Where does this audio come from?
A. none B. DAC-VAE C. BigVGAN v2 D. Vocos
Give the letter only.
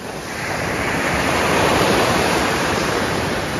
C